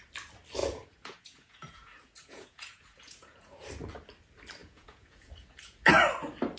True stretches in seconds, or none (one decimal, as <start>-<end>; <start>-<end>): 0.0-0.6; 3.7-4.6; 5.9-6.6